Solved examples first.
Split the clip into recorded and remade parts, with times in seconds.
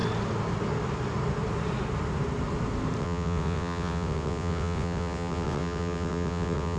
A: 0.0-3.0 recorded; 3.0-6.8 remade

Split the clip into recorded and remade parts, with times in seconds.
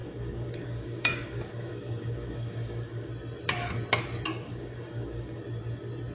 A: 0.0-3.1 remade; 3.1-4.3 recorded; 4.3-5.4 remade; 5.4-6.1 recorded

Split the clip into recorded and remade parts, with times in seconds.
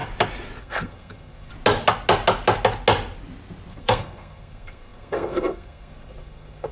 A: 0.0-0.6 recorded; 0.6-1.5 remade; 1.5-3.7 recorded; 3.7-6.7 remade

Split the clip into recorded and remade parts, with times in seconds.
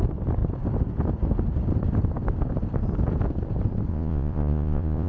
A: 0.0-3.9 recorded; 3.9-5.1 remade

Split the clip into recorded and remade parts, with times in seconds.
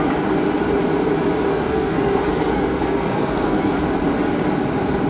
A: 0.0-1.5 recorded; 1.5-3.7 remade; 3.7-5.1 recorded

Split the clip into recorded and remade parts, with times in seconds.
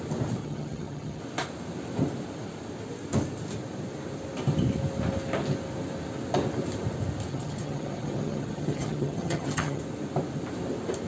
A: 0.0-0.4 recorded; 0.4-1.2 remade; 1.2-7.3 recorded; 7.3-9.8 remade; 9.8-11.1 recorded